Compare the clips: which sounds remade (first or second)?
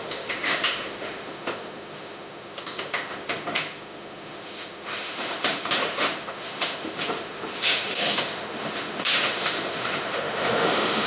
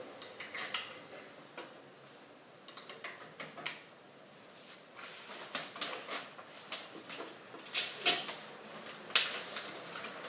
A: first